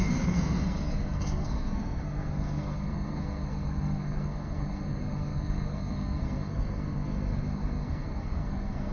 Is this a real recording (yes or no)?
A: no